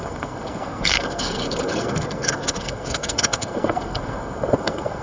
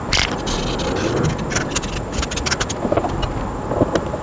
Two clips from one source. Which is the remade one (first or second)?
first